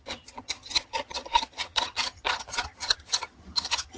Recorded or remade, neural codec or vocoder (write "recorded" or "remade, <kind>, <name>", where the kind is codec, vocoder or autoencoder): remade, vocoder, HiFi-GAN